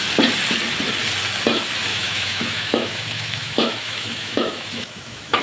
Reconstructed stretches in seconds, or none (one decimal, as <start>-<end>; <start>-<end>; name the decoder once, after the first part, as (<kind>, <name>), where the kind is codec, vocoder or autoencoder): 1.9-5.4 (autoencoder, DAC-VAE)